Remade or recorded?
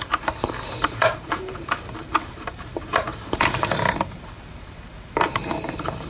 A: remade